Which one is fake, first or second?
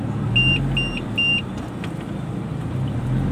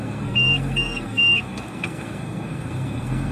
second